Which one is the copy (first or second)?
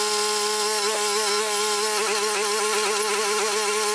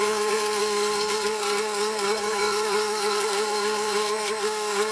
second